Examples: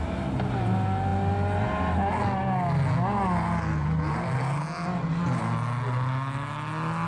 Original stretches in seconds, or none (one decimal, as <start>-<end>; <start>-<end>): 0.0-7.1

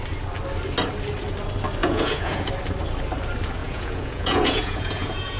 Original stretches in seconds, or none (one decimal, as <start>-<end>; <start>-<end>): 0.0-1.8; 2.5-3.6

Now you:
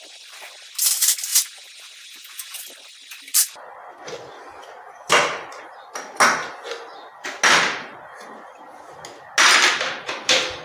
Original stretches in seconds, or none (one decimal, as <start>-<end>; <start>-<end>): 0.0-1.3; 2.6-10.6

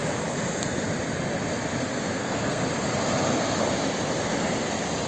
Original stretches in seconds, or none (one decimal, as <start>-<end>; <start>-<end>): 0.0-1.8; 2.6-5.1